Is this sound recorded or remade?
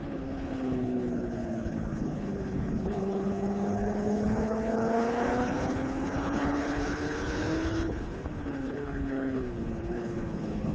remade